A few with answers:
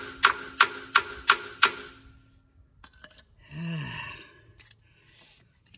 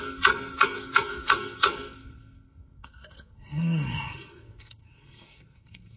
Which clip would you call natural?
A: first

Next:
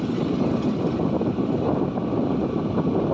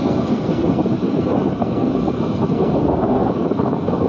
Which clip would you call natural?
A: first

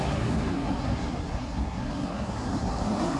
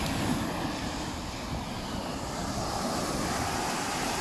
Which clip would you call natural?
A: second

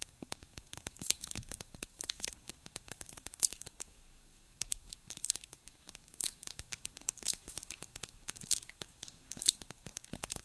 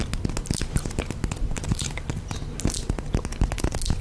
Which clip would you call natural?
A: second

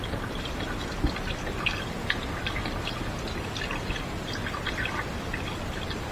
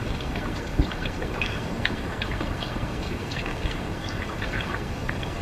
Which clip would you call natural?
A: first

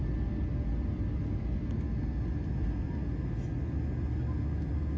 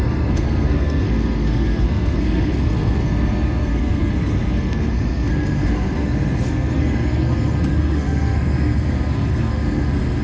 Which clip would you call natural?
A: first